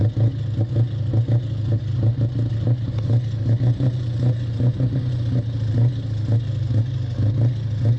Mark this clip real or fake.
real